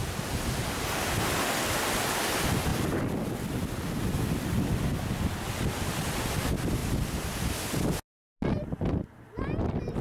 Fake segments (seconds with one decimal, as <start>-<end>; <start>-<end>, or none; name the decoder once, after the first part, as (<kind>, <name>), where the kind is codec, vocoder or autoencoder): none